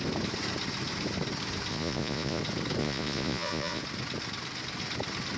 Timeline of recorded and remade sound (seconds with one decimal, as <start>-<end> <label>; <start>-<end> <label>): 0.0-1.7 recorded; 1.7-2.4 remade; 2.4-2.8 recorded; 2.8-3.8 remade; 3.8-5.4 recorded